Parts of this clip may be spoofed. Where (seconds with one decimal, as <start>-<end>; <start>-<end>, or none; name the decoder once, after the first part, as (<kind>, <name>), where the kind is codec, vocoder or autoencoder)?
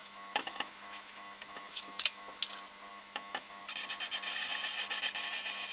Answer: 0.0-2.4 (autoencoder, DAC-VAE); 2.9-3.6